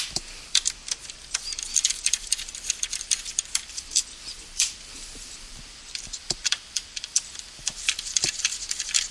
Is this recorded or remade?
remade